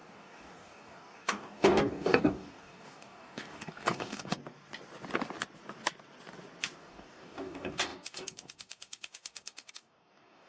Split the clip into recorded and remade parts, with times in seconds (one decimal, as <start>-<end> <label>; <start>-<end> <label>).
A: 0.0-4.4 remade; 4.4-6.8 recorded; 6.8-10.5 remade